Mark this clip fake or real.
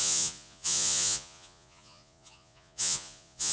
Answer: fake